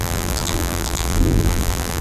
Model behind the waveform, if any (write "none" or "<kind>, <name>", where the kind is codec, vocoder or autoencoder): vocoder, BigVGAN v2